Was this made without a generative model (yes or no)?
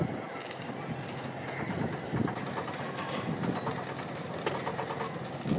yes